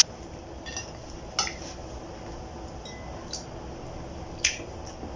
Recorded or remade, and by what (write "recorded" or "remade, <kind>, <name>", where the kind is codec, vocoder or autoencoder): recorded